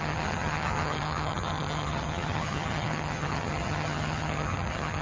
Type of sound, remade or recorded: remade